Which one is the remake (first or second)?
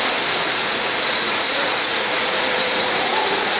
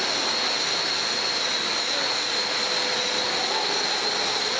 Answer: first